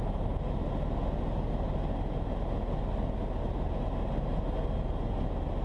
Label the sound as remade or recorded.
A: recorded